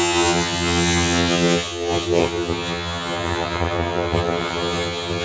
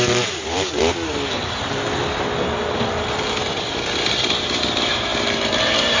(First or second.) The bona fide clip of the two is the second